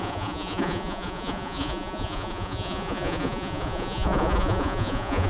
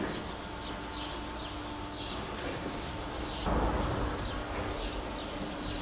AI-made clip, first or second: first